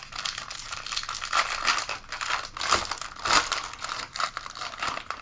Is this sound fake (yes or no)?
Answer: no